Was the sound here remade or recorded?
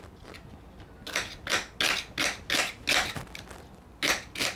recorded